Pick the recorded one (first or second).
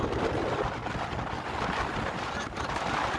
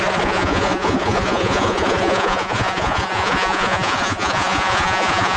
first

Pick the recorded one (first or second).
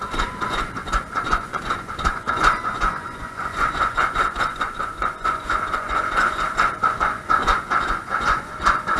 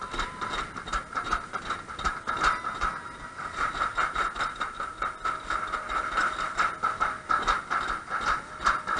second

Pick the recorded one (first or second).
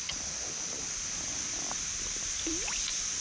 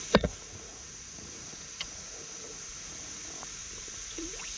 first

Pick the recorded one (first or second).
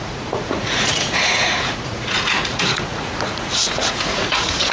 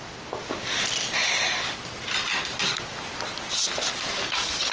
second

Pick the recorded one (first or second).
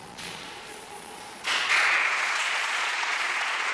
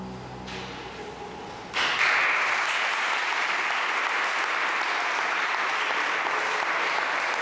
second